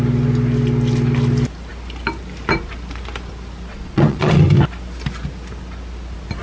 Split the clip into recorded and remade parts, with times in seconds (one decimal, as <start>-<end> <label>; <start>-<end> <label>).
0.0-3.7 recorded; 3.7-4.4 remade; 4.4-6.4 recorded